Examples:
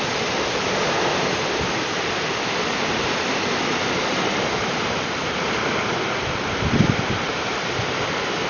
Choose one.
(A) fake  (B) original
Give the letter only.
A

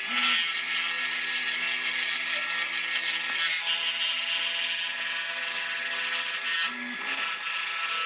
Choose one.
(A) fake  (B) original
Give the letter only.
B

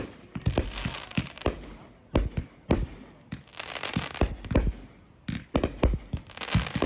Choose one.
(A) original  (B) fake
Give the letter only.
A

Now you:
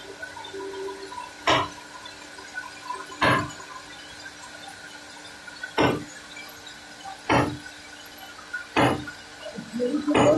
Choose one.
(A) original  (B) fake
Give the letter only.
A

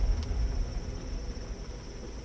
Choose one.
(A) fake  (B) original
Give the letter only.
B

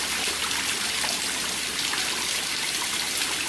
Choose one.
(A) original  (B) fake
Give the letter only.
A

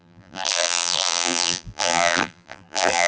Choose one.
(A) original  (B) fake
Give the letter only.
B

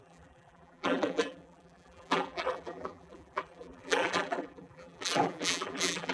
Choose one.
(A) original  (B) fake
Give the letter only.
B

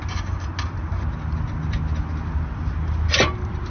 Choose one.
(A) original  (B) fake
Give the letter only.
A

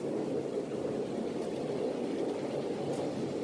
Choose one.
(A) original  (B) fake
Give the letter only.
A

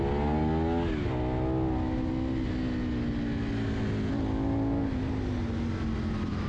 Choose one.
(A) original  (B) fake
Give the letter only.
A